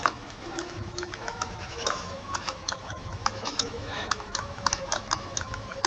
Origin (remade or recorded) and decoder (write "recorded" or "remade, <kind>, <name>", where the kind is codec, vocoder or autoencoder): remade, autoencoder, DAC-VAE